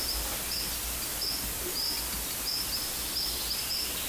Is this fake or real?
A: real